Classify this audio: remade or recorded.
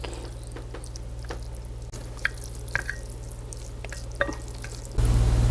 recorded